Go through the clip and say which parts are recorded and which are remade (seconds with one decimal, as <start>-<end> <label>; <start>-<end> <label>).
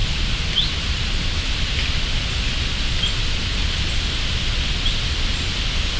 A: 0.0-3.6 recorded; 3.6-4.5 remade; 4.5-6.0 recorded